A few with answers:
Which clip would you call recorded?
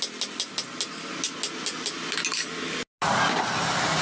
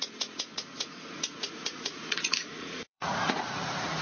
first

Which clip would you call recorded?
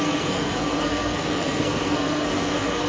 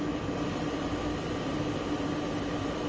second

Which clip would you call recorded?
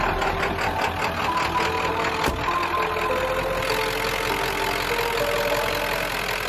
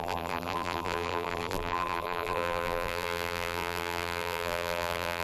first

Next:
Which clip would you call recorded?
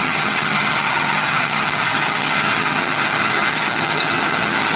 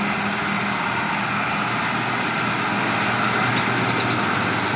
second